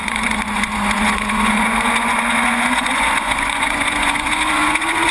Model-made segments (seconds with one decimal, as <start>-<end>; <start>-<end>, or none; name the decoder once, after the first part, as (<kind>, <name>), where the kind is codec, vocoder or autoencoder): 0.0-5.1 (vocoder, Vocos)